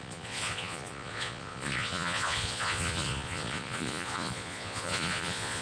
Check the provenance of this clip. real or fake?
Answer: fake